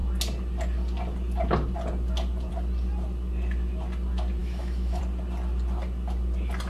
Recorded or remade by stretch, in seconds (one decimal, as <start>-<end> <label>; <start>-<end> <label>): 0.0-4.4 recorded; 4.4-5.0 remade; 5.0-6.7 recorded